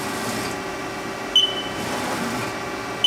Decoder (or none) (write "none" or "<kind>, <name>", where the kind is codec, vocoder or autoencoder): none